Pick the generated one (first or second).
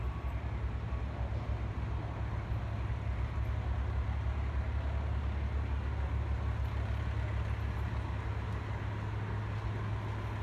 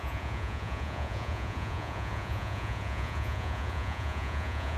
second